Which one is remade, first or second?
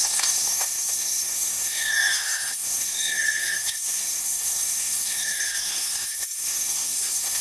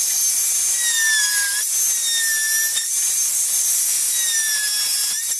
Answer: first